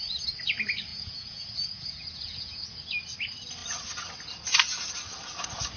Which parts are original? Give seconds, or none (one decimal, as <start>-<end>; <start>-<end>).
0.0-0.9; 2.8-5.8